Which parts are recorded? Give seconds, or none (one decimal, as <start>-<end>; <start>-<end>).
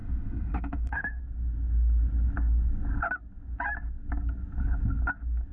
1.2-5.5